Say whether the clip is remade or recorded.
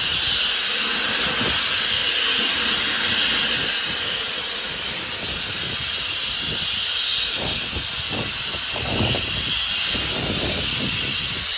recorded